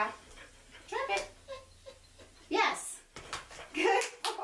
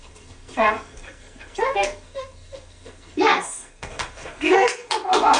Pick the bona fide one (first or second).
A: first